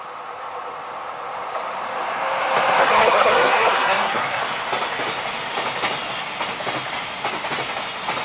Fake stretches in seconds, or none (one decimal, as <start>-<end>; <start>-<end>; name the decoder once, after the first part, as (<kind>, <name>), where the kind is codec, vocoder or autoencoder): 2.8-4.4 (codec, SNAC)